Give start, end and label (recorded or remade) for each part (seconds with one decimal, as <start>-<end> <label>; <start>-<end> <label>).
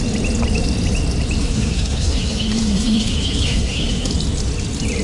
0.0-1.4 recorded; 1.4-4.1 remade; 4.1-5.0 recorded